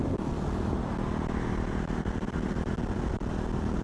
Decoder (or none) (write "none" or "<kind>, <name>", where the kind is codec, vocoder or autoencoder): none